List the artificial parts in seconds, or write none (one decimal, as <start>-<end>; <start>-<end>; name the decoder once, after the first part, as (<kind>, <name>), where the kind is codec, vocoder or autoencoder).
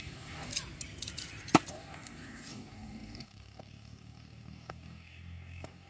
0.0-0.5 (codec, DAC); 1.7-5.9